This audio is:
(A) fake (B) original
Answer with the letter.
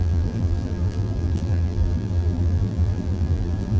A